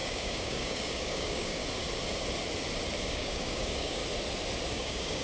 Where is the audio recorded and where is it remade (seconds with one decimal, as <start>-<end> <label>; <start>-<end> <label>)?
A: 0.0-1.6 remade; 1.6-3.0 recorded; 3.0-4.0 remade; 4.0-4.7 recorded; 4.7-5.2 remade